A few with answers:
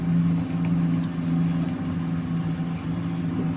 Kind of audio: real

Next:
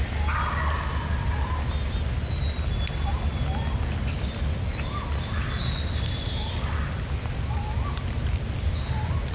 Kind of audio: real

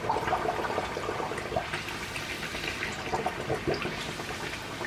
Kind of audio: real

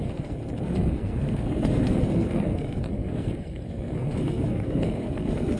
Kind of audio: fake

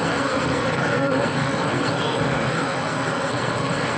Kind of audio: fake